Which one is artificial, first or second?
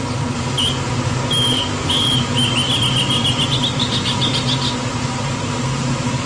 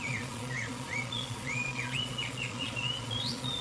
second